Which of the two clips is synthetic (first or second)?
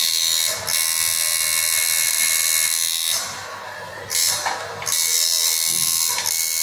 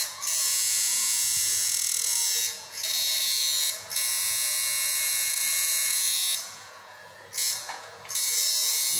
second